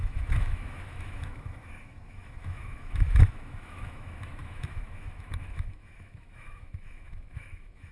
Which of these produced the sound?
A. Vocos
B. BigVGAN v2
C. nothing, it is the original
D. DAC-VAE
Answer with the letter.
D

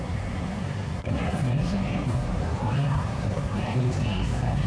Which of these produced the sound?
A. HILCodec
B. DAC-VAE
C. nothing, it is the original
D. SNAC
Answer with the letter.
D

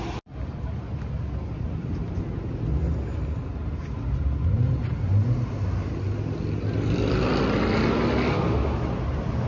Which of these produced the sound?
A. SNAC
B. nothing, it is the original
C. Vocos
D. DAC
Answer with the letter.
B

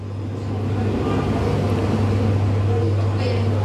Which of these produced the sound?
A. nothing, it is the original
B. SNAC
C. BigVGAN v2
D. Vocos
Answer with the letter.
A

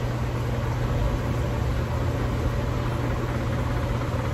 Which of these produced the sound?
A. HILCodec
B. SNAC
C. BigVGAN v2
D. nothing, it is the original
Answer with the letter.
D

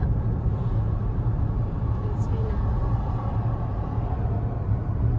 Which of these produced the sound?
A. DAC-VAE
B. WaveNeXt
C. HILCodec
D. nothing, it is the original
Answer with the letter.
D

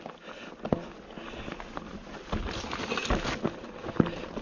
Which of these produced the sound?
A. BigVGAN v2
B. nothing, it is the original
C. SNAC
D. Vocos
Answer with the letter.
B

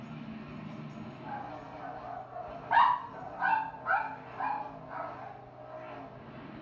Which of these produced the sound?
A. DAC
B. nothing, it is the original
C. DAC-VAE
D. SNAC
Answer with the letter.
B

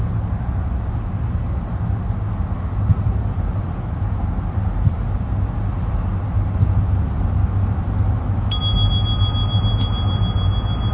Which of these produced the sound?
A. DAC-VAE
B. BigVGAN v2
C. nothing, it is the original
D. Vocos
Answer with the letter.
C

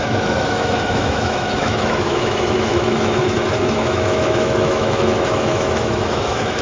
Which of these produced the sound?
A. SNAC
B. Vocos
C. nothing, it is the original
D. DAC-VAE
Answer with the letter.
D